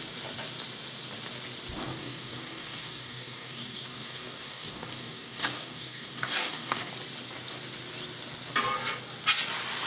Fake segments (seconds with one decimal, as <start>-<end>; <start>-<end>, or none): 1.9-6.9